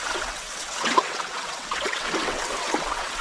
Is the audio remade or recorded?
remade